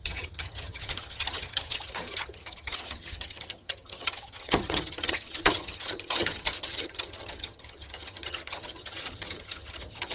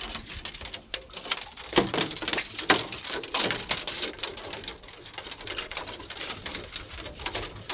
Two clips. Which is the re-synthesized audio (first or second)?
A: first